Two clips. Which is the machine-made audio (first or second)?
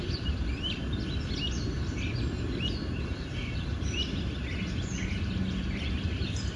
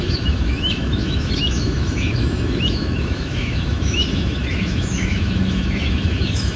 second